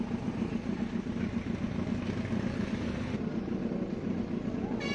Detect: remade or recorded recorded